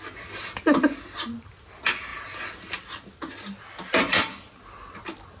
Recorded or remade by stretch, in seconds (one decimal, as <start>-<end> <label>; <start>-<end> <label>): 0.0-5.4 recorded